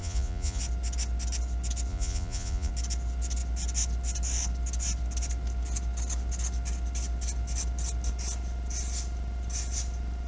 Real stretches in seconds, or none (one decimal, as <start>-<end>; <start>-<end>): 0.6-1.9; 2.7-10.3